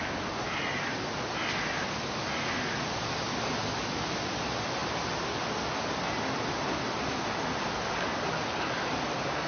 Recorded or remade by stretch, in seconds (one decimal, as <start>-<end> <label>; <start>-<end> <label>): 0.0-9.5 recorded

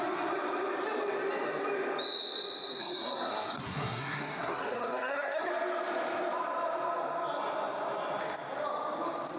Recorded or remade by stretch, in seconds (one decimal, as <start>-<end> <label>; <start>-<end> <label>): 0.0-2.8 recorded; 2.8-5.5 remade; 5.5-9.4 recorded

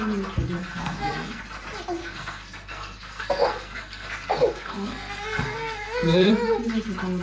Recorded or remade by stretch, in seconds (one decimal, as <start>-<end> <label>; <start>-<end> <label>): 0.0-0.6 recorded; 0.6-1.4 remade; 1.4-2.0 recorded; 2.0-6.3 remade; 6.3-7.2 recorded

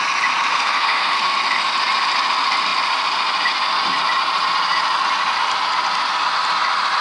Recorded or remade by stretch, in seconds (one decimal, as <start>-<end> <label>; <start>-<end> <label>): 0.0-0.5 recorded; 0.5-1.2 remade; 1.2-7.0 recorded

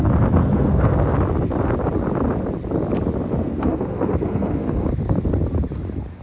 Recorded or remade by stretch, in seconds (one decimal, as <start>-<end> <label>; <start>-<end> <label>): 0.0-0.4 recorded; 0.4-0.9 remade; 0.9-3.4 recorded; 3.4-4.9 remade; 4.9-6.2 recorded